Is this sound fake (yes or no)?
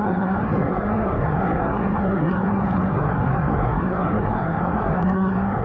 yes